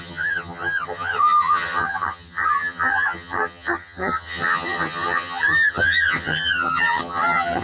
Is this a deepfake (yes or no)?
yes